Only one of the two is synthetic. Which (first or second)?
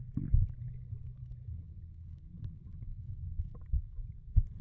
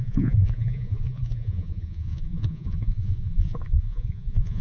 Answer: second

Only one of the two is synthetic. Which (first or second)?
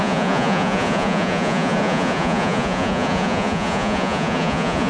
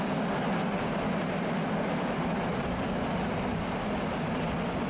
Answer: first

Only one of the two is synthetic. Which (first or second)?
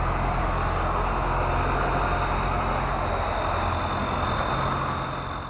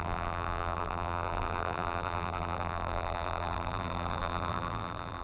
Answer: second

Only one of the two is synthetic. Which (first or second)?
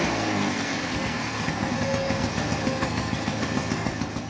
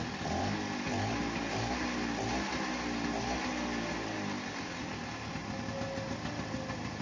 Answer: first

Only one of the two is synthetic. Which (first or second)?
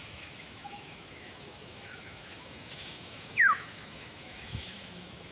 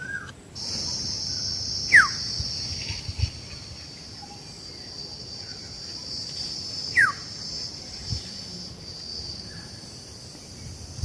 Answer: first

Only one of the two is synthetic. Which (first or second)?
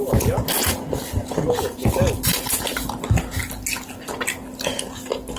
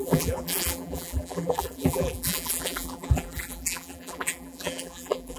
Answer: second